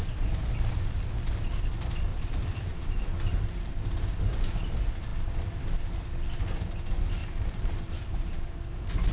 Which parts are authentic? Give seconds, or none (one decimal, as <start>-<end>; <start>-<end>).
0.0-2.1; 3.7-7.2; 8.5-9.1